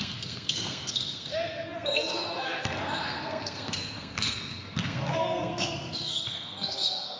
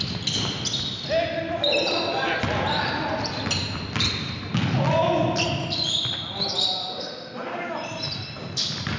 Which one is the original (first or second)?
second